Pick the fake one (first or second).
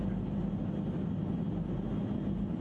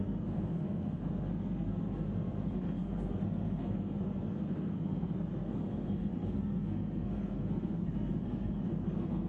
second